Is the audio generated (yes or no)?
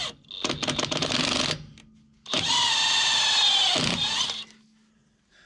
no